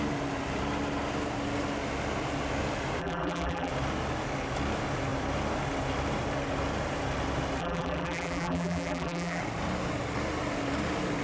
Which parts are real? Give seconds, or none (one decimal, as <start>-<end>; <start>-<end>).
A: 0.0-3.0; 3.7-7.6; 9.4-11.2